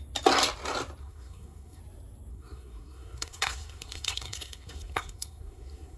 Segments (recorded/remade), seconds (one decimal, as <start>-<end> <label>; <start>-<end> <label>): 0.0-1.0 recorded; 1.0-1.8 remade; 1.8-2.3 recorded; 2.3-6.0 remade